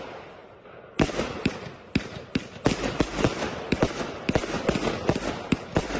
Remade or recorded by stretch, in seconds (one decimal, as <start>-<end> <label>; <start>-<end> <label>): 0.0-6.0 recorded